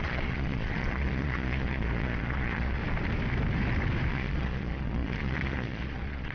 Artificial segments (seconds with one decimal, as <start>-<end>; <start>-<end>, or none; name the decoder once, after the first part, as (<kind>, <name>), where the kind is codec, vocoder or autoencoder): 0.0-2.8 (vocoder, Vocos); 4.1-6.3